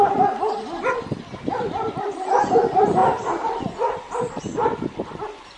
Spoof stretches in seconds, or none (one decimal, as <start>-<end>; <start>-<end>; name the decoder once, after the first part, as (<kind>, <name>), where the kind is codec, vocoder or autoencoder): none